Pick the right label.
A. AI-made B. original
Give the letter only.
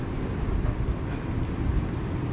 B